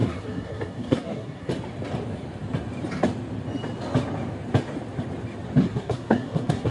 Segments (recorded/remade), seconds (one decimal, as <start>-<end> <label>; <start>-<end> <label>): 0.0-1.5 remade; 1.5-5.6 recorded; 5.6-6.7 remade